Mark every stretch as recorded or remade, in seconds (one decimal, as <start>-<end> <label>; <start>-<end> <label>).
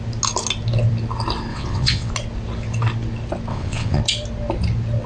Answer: 0.0-1.5 recorded; 1.5-2.1 remade; 2.1-3.5 recorded; 3.5-4.0 remade; 4.0-5.1 recorded